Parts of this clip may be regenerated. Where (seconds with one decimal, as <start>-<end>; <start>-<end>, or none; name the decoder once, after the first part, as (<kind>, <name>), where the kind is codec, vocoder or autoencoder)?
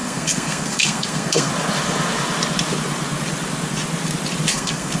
0.0-1.5 (codec, SNAC); 4.5-5.0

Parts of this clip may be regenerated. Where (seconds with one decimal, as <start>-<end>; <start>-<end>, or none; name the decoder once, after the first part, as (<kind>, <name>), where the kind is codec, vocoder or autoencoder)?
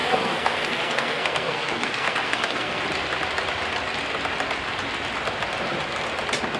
0.0-2.8 (codec, SNAC)